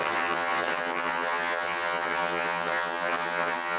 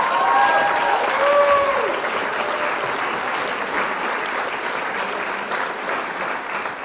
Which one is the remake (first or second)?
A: first